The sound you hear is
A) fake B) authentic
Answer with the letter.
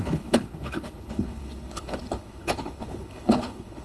A